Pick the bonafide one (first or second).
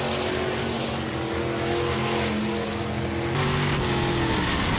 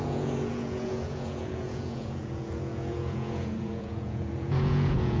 first